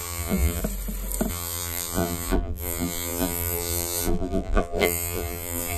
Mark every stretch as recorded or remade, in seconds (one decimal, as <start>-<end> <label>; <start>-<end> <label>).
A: 0.0-0.6 remade; 0.6-1.3 recorded; 1.3-5.8 remade